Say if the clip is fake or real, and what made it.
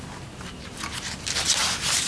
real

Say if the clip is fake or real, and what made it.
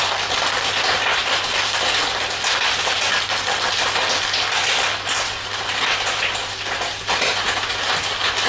real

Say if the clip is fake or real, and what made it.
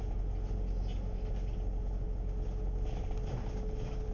real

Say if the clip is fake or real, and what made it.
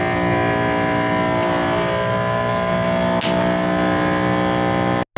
real